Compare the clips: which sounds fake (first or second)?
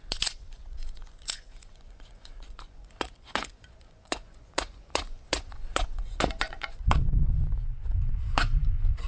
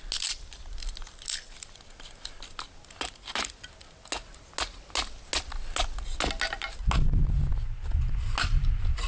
first